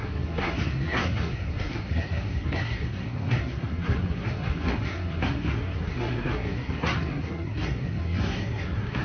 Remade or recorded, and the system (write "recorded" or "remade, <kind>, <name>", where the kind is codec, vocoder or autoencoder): remade, codec, SNAC